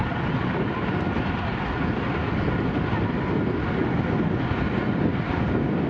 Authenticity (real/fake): real